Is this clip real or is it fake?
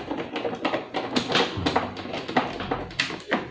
real